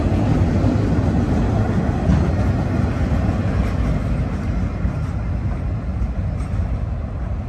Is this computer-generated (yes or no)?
no